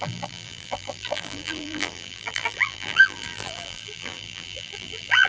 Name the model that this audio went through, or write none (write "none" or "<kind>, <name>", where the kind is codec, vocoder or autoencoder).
vocoder, BigVGAN v2